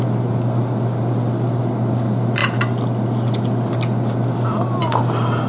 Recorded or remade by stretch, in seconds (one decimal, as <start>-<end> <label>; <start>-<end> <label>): 0.0-5.5 recorded

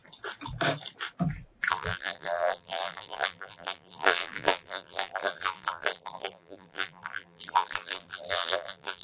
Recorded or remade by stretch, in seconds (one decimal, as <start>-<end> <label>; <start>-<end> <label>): 0.0-1.7 recorded; 1.7-9.0 remade

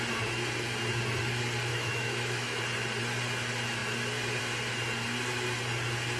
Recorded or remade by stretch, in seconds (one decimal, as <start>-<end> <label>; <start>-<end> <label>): 0.0-1.7 recorded; 1.7-2.6 remade; 2.6-6.2 recorded

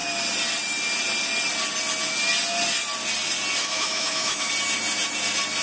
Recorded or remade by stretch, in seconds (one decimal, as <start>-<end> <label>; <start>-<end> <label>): 0.0-3.6 recorded; 3.6-4.5 remade; 4.5-5.6 recorded

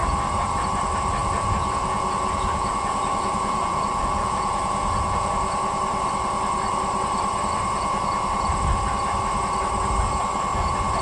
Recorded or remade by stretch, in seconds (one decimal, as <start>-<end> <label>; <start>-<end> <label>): 0.0-1.2 recorded; 1.2-5.3 remade; 5.3-11.0 recorded

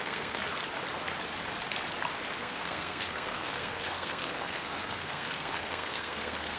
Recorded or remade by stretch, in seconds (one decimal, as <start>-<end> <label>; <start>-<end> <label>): 0.0-0.4 remade; 0.4-2.4 recorded; 2.4-6.6 remade